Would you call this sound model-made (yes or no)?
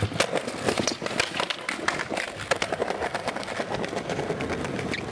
no